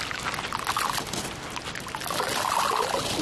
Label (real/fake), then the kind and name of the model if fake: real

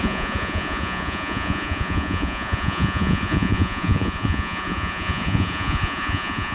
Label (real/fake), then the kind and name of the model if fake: fake, vocoder, Vocos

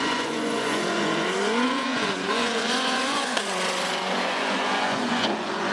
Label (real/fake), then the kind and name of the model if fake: fake, vocoder, Vocos